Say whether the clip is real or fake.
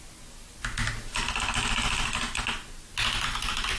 real